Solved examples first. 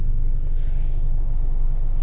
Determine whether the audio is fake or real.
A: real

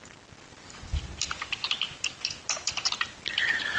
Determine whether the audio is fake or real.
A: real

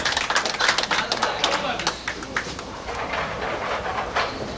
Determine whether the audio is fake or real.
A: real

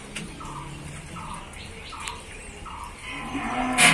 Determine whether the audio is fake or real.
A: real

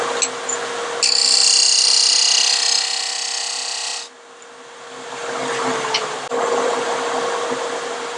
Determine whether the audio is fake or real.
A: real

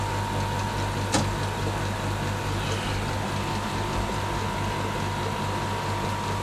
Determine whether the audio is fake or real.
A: real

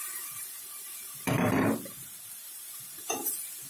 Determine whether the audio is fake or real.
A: fake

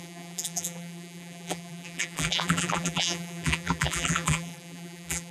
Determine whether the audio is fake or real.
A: fake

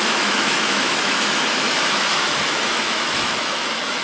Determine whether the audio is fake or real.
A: fake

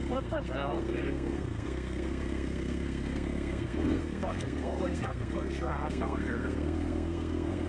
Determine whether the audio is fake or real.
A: fake